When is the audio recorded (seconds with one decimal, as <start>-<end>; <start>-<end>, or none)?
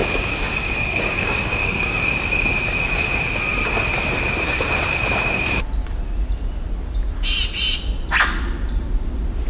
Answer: 2.0-9.5